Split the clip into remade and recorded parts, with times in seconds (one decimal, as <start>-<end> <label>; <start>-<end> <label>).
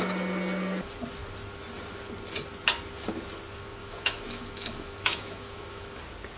0.0-3.8 recorded; 3.8-6.0 remade; 6.0-6.4 recorded